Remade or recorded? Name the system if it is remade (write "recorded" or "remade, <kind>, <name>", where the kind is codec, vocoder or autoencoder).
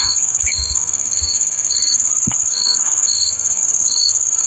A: remade, codec, SNAC